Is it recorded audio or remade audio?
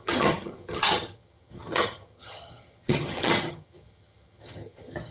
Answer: remade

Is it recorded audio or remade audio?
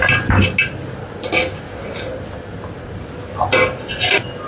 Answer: recorded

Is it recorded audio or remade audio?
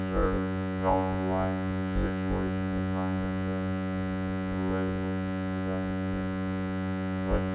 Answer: remade